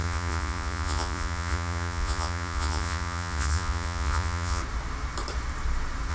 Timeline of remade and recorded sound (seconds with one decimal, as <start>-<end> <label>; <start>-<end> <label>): 0.0-4.6 remade; 4.6-6.1 recorded

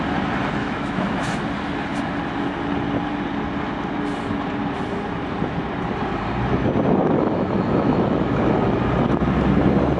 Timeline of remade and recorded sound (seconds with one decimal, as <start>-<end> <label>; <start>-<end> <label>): 0.0-0.6 recorded; 0.6-1.4 remade; 1.4-7.0 recorded; 7.0-8.6 remade; 8.6-10.0 recorded

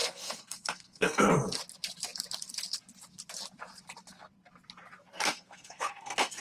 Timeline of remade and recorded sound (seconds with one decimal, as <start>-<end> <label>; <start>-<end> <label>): 0.0-1.3 remade; 1.3-5.1 recorded; 5.1-6.4 remade

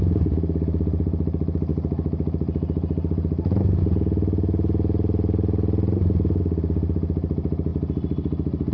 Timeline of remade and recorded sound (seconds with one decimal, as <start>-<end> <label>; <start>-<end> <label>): 0.0-8.7 recorded

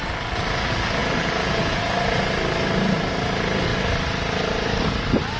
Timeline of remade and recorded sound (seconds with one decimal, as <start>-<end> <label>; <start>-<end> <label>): 0.0-1.0 recorded; 1.0-1.8 remade; 1.8-5.4 recorded